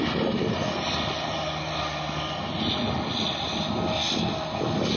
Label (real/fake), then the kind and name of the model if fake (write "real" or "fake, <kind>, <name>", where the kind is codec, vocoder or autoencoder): real